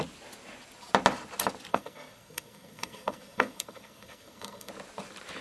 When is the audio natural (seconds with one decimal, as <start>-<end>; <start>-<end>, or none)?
0.0-1.7; 4.7-5.4